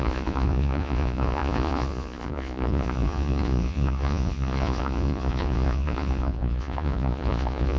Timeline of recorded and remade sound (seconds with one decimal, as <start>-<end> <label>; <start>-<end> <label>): 0.0-7.8 remade